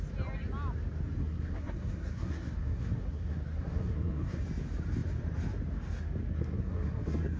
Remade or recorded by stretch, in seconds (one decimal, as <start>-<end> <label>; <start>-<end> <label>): 0.0-1.2 recorded; 1.2-4.4 remade; 4.4-6.3 recorded; 6.3-7.4 remade